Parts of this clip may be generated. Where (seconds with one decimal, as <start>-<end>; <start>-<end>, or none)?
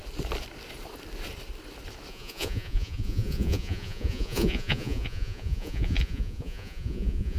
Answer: 2.1-7.4